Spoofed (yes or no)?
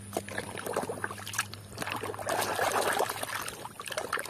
no